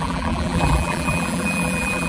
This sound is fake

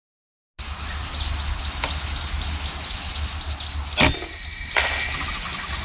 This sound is real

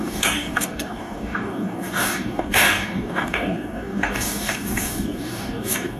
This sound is fake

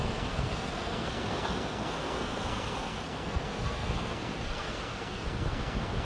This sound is fake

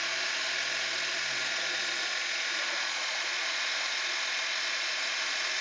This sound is fake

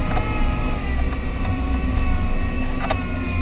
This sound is real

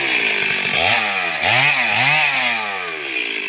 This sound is real